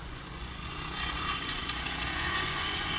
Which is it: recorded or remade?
remade